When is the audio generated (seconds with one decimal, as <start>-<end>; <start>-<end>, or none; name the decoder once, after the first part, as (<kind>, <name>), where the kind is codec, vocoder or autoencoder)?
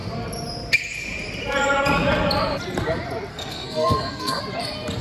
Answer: 3.3-4.4 (codec, SNAC)